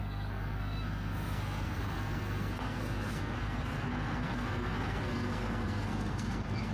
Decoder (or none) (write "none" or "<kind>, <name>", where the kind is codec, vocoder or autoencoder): codec, SNAC